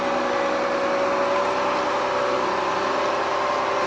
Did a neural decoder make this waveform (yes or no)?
no